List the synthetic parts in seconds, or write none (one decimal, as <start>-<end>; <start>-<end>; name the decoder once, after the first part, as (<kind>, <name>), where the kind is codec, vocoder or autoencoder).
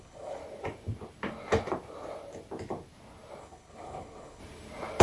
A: 0.0-0.4 (codec, HILCodec); 3.4-4.4